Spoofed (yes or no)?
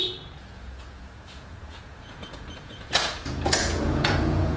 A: yes